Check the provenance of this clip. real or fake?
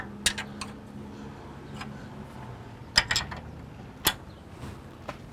real